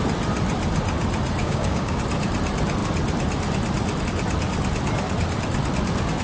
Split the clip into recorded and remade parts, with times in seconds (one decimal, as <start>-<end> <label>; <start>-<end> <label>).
0.0-1.4 recorded; 1.4-2.0 remade; 2.0-6.2 recorded